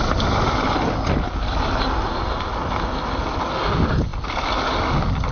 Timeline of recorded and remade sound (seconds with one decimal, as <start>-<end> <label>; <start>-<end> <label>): 0.0-5.3 recorded

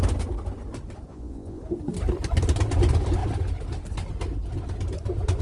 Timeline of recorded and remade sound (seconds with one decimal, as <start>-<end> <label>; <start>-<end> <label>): 0.0-1.1 recorded; 1.1-1.6 remade; 1.6-5.4 recorded

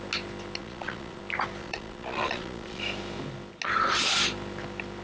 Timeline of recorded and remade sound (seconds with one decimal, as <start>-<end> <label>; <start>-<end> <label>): 0.0-0.6 recorded; 0.6-1.2 remade; 1.2-1.6 recorded; 1.6-2.8 remade; 2.8-5.0 recorded

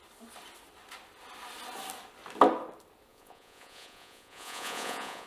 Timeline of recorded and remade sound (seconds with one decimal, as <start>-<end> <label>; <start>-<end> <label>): 0.0-3.1 recorded; 3.1-5.3 remade

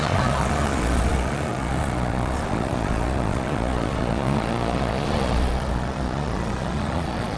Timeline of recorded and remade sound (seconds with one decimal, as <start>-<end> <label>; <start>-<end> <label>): 0.0-7.4 remade

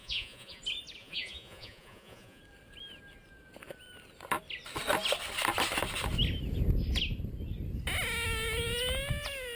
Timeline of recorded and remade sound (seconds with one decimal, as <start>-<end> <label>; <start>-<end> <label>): 0.0-0.6 remade; 0.6-1.0 recorded; 1.0-2.4 remade; 2.4-9.6 recorded